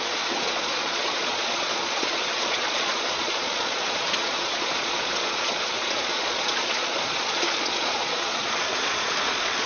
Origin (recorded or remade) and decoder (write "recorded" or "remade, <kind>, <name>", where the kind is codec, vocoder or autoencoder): remade, vocoder, Vocos